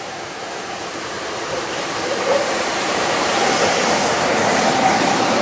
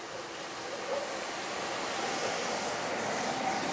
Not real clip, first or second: first